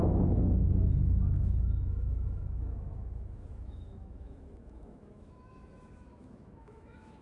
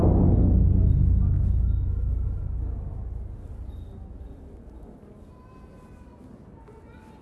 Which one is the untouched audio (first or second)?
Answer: second